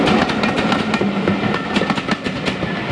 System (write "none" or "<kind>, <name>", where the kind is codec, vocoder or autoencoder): none